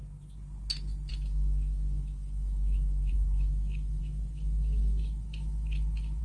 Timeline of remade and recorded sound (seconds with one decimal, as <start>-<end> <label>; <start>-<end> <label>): 0.0-1.1 recorded; 1.1-6.2 remade